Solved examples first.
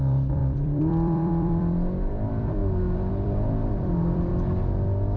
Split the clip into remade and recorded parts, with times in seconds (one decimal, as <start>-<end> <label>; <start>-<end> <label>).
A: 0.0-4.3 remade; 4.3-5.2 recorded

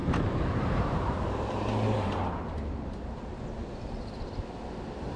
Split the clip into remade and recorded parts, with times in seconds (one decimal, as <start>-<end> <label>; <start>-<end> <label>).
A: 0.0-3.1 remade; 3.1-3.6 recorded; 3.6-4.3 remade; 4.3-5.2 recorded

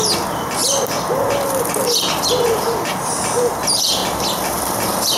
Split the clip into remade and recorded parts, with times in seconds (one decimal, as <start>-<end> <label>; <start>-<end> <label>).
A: 0.0-0.6 remade; 0.6-2.1 recorded; 2.1-4.0 remade; 4.0-4.5 recorded; 4.5-5.2 remade